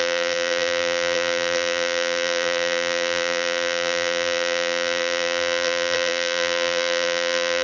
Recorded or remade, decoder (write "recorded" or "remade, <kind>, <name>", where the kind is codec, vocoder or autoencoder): remade, vocoder, BigVGAN v2